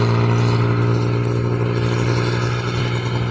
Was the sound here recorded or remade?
recorded